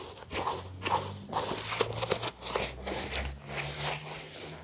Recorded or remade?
recorded